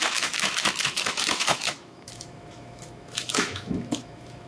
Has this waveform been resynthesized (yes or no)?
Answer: yes